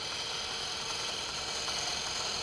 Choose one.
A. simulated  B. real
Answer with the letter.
B